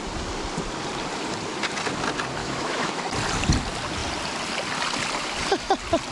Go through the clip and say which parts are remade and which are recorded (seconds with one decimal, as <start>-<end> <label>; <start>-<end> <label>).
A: 0.0-2.4 recorded; 2.4-3.0 remade; 3.0-6.1 recorded